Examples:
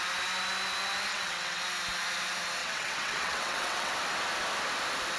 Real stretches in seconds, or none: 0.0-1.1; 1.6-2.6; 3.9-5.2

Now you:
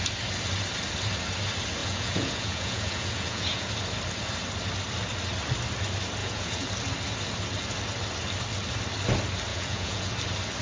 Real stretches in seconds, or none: 0.0-1.8; 3.7-6.2; 6.7-9.5; 10.1-10.6

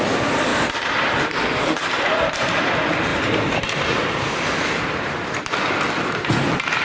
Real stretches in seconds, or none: 0.0-0.5; 2.1-3.1; 5.7-6.8